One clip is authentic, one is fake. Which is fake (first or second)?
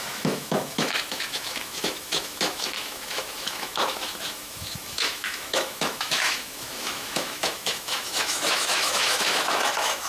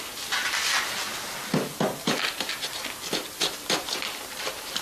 first